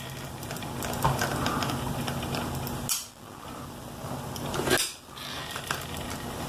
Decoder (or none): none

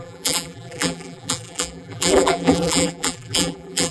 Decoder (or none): vocoder, BigVGAN v2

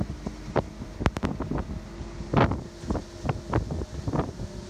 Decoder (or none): none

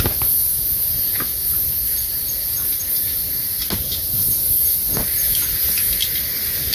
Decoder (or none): none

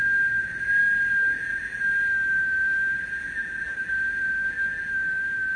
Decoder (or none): none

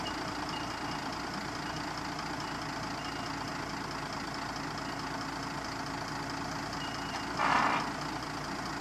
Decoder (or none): none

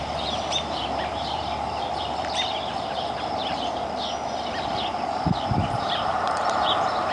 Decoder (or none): vocoder, BigVGAN v2